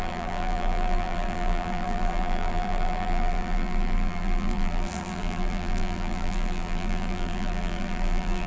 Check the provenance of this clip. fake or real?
fake